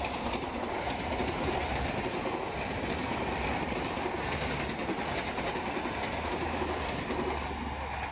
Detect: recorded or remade recorded